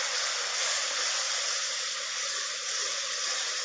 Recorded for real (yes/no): yes